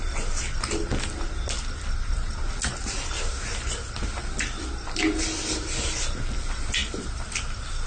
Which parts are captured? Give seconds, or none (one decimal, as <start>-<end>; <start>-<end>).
0.0-7.9